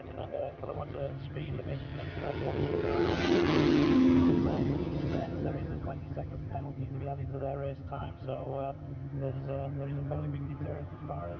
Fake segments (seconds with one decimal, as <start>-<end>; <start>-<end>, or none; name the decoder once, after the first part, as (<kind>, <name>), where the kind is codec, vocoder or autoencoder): 0.0-11.4 (vocoder, HiFi-GAN)